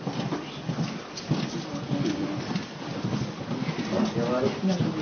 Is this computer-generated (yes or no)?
no